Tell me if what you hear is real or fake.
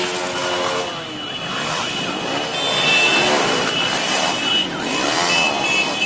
real